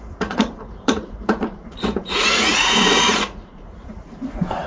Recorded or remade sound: remade